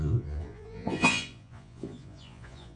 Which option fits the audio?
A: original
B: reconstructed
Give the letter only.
B